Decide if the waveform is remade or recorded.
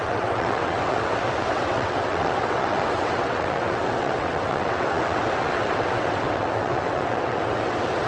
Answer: remade